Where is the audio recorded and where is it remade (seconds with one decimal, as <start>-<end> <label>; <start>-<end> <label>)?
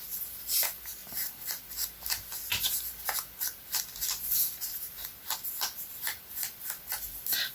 0.0-7.5 recorded